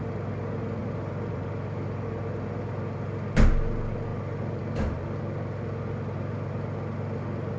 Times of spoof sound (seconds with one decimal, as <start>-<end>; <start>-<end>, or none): 0.8-1.4; 4.1-5.2